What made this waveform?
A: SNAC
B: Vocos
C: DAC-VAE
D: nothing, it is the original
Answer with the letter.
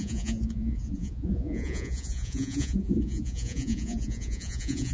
B